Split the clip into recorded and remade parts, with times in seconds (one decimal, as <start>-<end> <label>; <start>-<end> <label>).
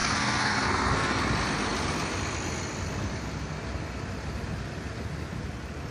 0.0-1.2 remade; 1.2-5.9 recorded